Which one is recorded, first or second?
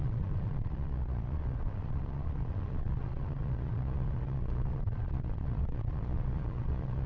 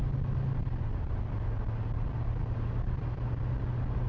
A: second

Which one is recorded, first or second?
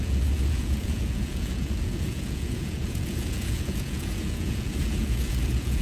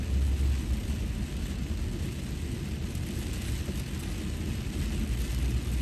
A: second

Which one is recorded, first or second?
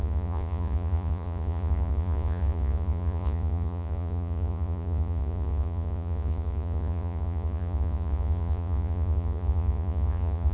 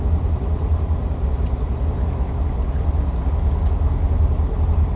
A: second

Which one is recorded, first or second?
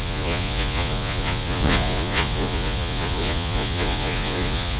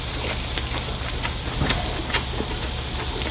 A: second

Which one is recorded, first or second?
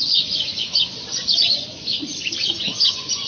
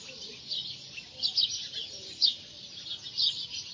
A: second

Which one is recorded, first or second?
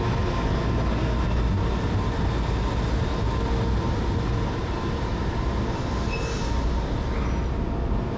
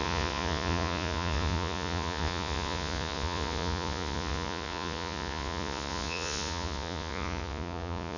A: first